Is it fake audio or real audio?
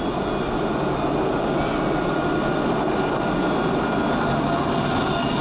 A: real